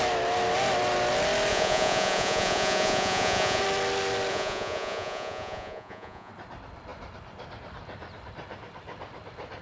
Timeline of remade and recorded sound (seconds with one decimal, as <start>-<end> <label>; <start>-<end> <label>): 0.0-1.5 recorded; 1.5-3.6 remade; 3.6-4.3 recorded; 4.3-6.3 remade; 6.3-9.6 recorded

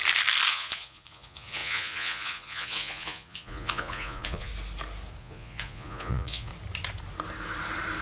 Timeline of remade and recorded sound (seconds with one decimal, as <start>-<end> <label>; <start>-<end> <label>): 0.0-0.5 recorded; 0.5-4.5 remade; 4.5-5.2 recorded; 5.2-6.5 remade; 6.5-8.0 recorded

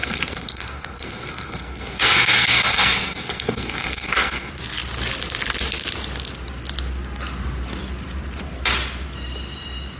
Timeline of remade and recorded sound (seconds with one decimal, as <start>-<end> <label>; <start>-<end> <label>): 0.0-4.5 remade; 4.5-10.0 recorded

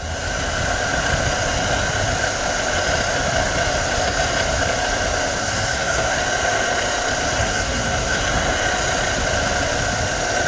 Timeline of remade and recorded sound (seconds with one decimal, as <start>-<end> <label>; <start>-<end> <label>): 0.0-5.4 recorded; 5.4-6.2 remade; 6.2-7.4 recorded; 7.4-8.2 remade; 8.2-10.5 recorded

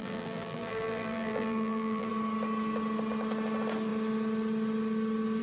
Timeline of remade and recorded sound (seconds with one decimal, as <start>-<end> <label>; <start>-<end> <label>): 0.0-2.1 remade; 2.1-5.4 recorded

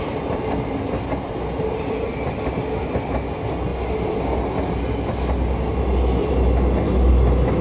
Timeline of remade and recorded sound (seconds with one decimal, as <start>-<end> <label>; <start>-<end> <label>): 0.0-7.6 recorded

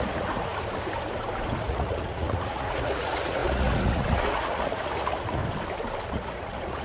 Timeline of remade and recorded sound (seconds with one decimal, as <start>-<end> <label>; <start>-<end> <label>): 0.0-0.5 remade; 0.5-1.6 recorded; 1.6-5.4 remade; 5.4-6.1 recorded; 6.1-6.8 remade

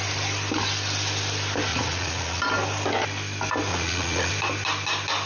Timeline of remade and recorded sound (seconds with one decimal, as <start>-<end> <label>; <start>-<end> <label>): 0.0-1.7 recorded; 1.7-2.4 remade; 2.4-3.7 recorded; 3.7-4.3 remade; 4.3-5.3 recorded